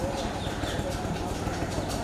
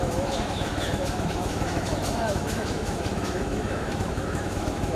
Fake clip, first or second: second